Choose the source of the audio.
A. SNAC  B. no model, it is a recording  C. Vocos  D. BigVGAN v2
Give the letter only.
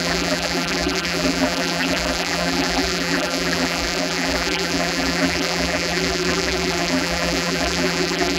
D